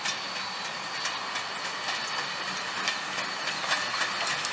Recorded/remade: recorded